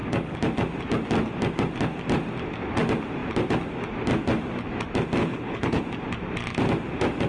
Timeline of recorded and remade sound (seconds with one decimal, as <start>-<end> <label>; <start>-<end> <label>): 0.0-5.2 recorded; 5.2-5.8 remade; 5.8-7.3 recorded